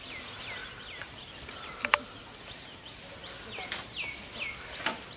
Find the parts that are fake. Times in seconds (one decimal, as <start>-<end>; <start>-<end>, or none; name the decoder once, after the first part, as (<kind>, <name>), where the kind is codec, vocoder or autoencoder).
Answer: none